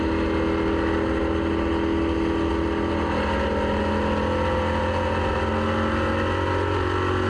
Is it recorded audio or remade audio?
recorded